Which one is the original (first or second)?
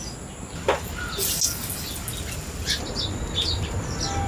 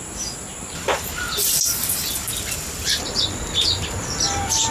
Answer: first